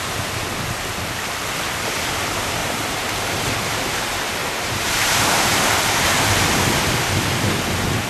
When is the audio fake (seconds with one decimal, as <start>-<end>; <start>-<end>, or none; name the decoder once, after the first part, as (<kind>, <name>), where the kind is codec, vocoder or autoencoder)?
2.6-3.9 (vocoder, BigVGAN v2); 4.4-5.8